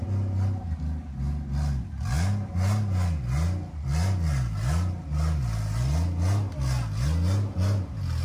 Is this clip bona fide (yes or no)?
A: yes